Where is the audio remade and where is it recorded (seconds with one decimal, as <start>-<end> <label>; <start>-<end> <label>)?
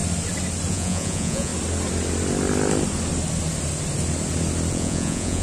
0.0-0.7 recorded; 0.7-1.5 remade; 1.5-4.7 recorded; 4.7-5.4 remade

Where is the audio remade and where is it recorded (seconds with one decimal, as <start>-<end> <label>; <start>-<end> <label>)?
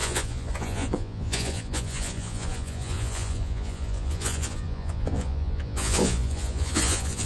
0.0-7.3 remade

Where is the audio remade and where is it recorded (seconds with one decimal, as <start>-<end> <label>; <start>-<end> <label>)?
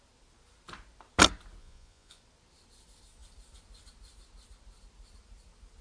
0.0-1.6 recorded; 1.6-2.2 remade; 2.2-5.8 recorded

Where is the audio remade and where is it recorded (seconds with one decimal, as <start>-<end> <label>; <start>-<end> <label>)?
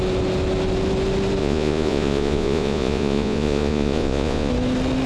0.0-1.4 recorded; 1.4-4.5 remade; 4.5-5.1 recorded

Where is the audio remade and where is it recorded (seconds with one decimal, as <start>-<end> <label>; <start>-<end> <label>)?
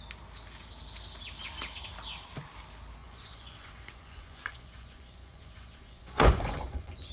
0.0-3.0 recorded; 3.0-7.1 remade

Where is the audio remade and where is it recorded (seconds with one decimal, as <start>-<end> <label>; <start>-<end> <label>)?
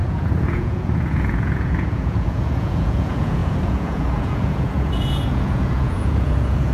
0.0-6.7 remade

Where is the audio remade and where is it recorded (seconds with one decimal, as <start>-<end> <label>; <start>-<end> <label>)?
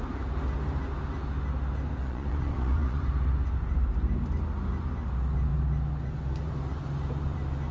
0.0-2.0 recorded; 2.0-3.0 remade; 3.0-7.7 recorded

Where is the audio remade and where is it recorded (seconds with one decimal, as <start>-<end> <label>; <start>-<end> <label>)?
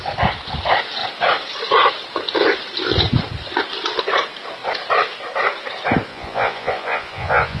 0.0-6.1 recorded; 6.1-7.6 remade